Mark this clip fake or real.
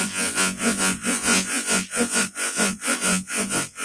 fake